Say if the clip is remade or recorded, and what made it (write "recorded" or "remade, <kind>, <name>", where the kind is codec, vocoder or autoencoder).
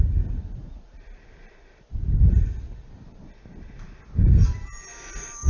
remade, vocoder, BigVGAN v2